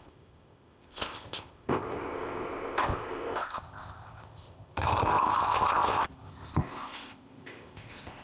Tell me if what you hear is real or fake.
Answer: fake